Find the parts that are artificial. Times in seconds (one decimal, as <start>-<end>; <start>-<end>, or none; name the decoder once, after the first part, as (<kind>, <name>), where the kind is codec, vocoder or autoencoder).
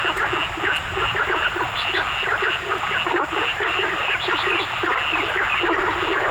0.8-4.6 (vocoder, BigVGAN v2)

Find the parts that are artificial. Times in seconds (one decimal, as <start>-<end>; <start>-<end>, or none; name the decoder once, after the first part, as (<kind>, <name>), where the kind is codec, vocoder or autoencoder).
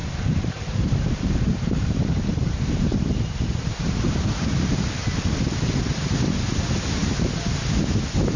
0.0-3.7 (vocoder, BigVGAN v2)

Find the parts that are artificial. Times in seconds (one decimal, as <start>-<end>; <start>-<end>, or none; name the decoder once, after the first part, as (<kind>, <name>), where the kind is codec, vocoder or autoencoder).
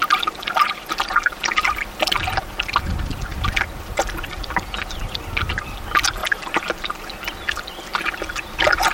3.3-5.5 (vocoder, BigVGAN v2); 6.2-7.1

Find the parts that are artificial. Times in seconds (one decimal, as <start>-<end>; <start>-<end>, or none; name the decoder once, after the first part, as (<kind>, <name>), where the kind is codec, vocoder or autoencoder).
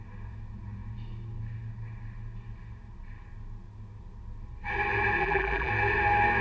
5.2-5.7 (vocoder, BigVGAN v2)